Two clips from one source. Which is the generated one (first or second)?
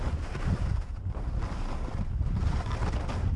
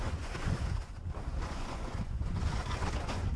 second